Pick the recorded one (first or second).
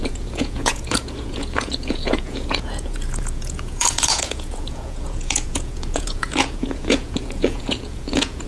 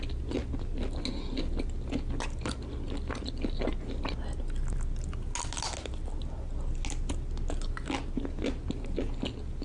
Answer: second